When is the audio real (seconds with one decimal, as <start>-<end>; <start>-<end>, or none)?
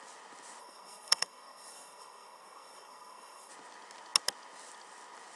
0.0-0.6; 3.5-5.4